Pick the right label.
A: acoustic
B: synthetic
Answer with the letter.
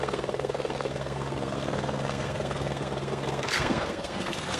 B